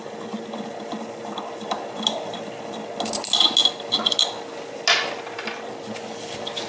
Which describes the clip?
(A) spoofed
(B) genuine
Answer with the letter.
B